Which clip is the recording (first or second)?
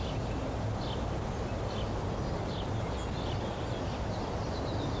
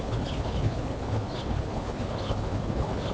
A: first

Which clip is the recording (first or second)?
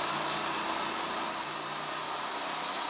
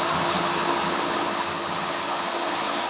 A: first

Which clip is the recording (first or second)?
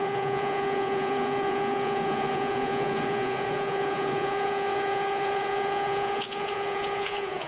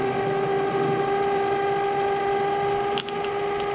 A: second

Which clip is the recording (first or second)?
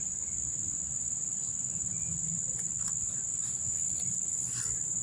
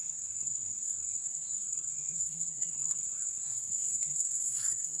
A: first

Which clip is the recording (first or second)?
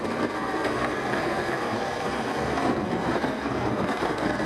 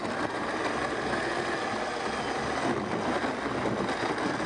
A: second